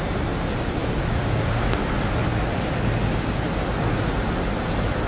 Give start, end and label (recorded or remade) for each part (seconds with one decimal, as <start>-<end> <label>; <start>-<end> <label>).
0.0-0.8 recorded; 0.8-1.7 remade; 1.7-5.1 recorded

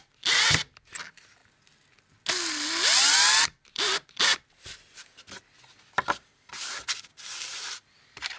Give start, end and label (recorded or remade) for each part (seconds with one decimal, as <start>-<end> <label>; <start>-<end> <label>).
0.0-1.4 remade; 1.4-3.4 recorded; 3.4-5.0 remade; 5.0-7.7 recorded; 7.7-8.4 remade

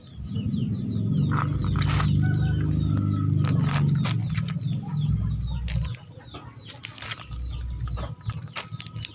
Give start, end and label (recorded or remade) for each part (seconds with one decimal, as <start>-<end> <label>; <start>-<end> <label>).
0.0-9.1 recorded